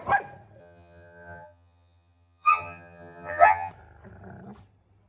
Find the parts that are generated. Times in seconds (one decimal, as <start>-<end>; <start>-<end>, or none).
0.6-3.7